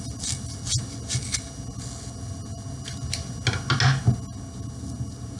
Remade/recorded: recorded